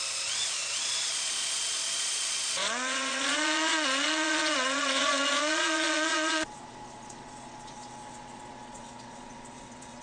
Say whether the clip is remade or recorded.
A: remade